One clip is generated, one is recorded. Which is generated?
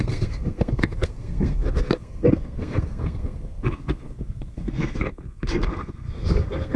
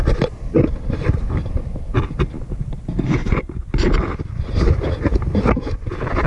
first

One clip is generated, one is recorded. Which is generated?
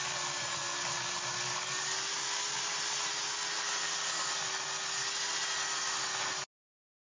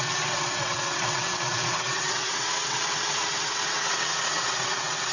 second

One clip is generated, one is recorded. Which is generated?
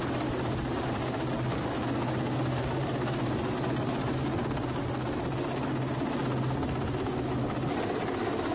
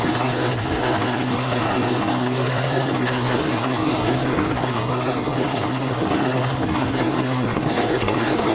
second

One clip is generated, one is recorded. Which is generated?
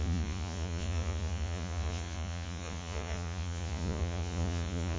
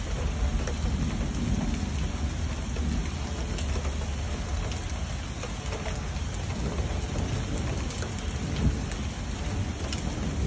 first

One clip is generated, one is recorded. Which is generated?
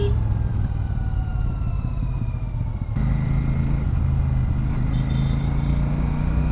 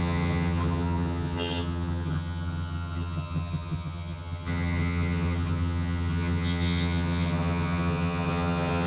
second